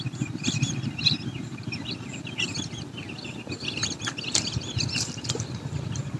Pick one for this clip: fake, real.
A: fake